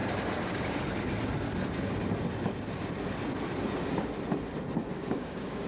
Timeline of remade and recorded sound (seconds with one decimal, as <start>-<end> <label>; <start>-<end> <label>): 0.0-0.8 remade; 0.8-4.9 recorded; 4.9-5.7 remade